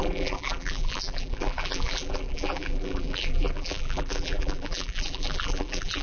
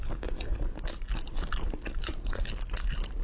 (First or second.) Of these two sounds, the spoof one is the first